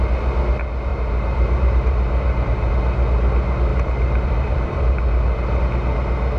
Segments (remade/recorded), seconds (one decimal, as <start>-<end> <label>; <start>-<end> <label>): 0.0-0.9 recorded; 0.9-2.7 remade; 2.7-3.7 recorded; 3.7-5.6 remade; 5.6-6.4 recorded